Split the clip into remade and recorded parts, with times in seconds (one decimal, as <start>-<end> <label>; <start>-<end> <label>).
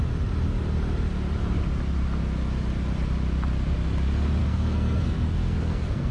0.0-4.4 recorded; 4.4-6.1 remade